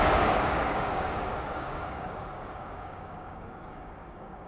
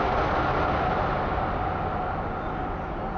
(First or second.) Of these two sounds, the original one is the second